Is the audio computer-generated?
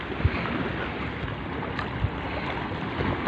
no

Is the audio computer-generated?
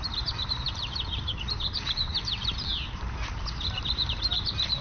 yes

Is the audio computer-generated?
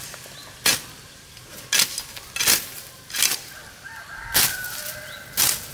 no